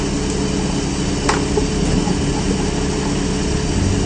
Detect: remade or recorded recorded